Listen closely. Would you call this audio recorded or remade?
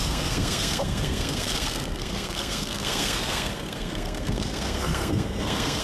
remade